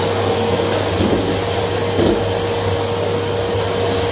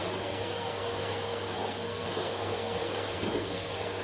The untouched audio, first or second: first